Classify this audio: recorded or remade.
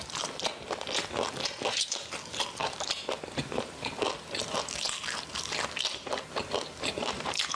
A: recorded